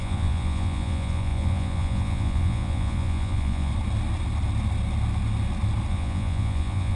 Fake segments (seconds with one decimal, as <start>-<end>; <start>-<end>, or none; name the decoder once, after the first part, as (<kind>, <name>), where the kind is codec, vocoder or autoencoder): 0.0-3.7 (vocoder, Vocos); 5.9-7.0